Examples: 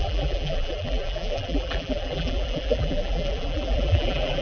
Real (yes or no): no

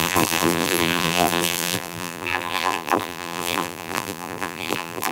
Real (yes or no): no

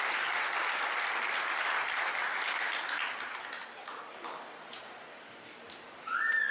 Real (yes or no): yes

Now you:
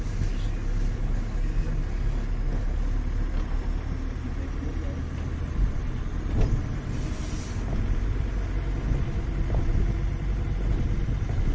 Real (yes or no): yes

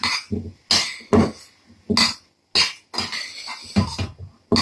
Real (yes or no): yes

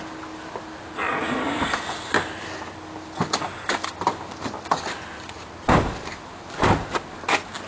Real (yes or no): yes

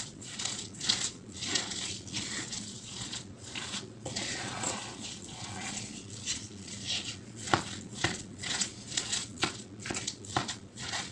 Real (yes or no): no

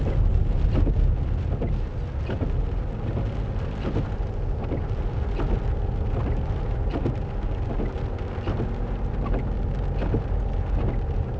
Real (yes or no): yes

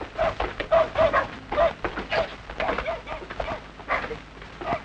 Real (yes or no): yes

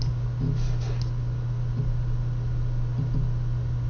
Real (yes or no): yes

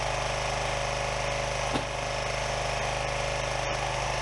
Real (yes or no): yes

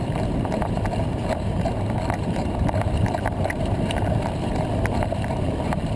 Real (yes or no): no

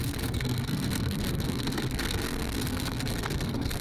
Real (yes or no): no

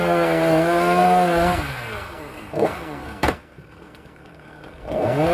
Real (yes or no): no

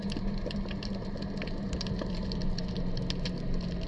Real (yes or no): yes